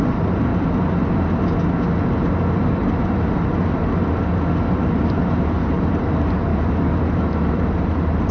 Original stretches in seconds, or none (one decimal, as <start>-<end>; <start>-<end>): 0.5-4.7; 6.5-7.5